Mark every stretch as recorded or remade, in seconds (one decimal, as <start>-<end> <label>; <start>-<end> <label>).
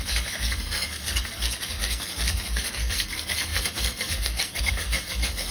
0.0-5.5 remade